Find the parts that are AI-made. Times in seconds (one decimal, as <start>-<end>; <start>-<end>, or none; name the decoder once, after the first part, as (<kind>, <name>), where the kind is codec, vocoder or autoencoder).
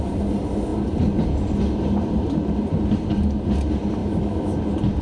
4.0-4.6 (autoencoder, DAC-VAE)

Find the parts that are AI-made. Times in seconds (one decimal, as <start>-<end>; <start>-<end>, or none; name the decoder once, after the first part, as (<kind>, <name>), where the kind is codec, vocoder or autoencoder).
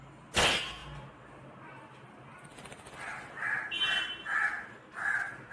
none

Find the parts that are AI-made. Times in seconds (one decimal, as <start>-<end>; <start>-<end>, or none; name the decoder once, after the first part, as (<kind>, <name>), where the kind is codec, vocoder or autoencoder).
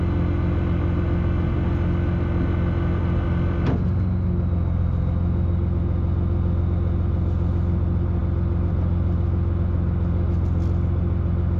none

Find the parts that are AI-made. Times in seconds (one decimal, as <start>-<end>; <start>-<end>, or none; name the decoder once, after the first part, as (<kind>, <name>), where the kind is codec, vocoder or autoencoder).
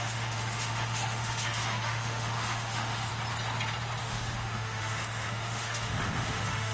0.0-3.1 (autoencoder, DAC-VAE); 4.0-6.7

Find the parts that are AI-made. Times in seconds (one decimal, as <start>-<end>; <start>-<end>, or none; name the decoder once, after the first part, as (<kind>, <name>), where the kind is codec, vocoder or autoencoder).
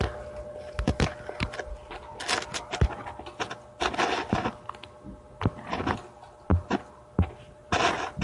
none